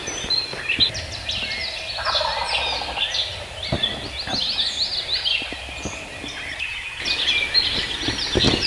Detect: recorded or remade recorded